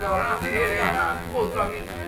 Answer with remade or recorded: remade